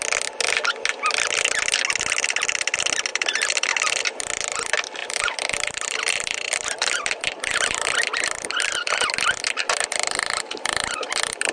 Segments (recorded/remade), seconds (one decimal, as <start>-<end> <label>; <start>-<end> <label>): 0.0-3.1 recorded; 3.1-3.7 remade; 3.7-5.0 recorded; 5.0-8.2 remade; 8.2-11.5 recorded